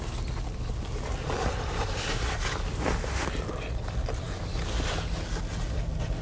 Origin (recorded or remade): recorded